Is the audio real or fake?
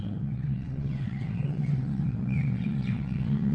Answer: fake